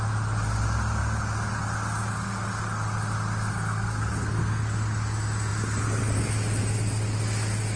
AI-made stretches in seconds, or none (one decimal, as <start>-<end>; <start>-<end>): 2.1-2.8; 3.5-4.6